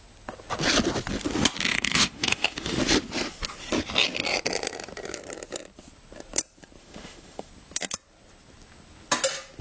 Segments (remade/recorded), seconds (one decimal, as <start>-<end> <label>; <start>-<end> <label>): 0.0-1.7 recorded; 1.7-2.8 remade; 2.8-6.8 recorded; 6.8-7.5 remade; 7.5-9.6 recorded